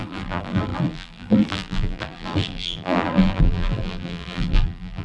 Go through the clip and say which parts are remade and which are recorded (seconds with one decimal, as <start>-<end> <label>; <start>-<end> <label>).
0.0-5.0 remade